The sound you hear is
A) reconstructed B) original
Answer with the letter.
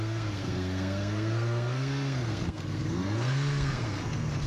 A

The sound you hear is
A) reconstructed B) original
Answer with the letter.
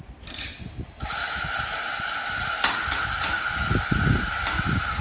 B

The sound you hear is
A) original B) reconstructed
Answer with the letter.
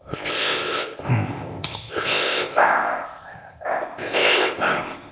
B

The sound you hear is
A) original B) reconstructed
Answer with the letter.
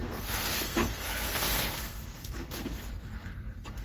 B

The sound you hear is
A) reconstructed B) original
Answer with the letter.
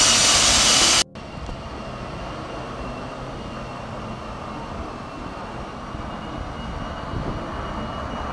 B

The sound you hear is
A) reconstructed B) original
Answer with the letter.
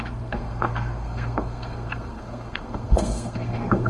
A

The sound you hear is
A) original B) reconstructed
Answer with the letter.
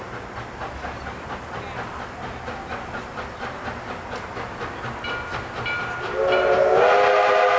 A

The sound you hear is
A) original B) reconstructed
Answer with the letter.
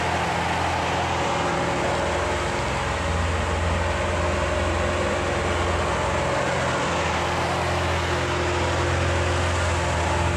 A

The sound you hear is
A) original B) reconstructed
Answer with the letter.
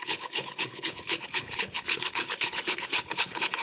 B